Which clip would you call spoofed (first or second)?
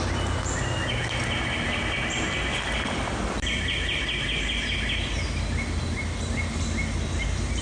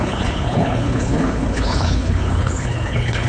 second